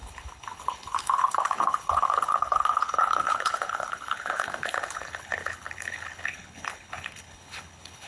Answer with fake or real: fake